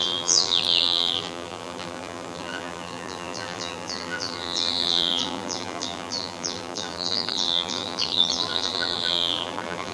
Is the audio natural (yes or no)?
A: no